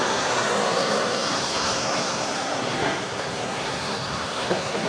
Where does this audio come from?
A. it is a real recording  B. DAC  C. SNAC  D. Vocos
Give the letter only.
C